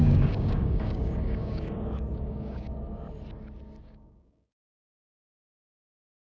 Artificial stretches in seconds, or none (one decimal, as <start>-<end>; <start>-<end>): 0.0-2.7; 3.8-6.3

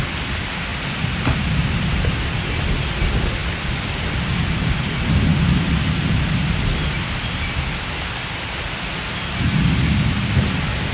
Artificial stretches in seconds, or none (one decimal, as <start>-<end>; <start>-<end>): none

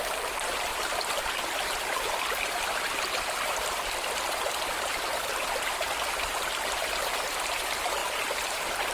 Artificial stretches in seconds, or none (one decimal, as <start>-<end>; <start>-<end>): 0.7-5.7; 8.0-8.9

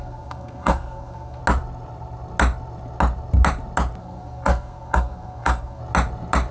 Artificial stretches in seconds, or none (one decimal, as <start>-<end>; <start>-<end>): 0.0-1.4; 4.0-5.8